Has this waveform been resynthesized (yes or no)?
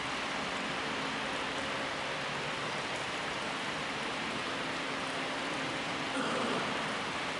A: no